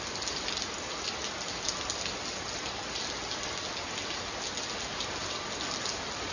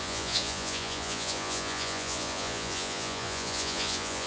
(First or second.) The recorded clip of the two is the first